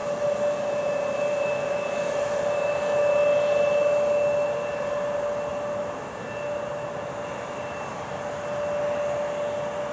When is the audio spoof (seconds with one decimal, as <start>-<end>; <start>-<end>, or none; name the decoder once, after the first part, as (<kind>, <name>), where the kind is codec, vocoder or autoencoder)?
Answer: none